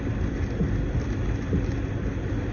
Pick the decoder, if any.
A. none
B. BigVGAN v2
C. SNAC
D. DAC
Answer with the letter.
A